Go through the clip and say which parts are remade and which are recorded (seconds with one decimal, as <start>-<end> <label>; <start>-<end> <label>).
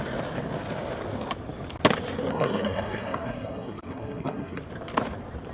0.0-2.3 recorded; 2.3-4.6 remade; 4.6-5.5 recorded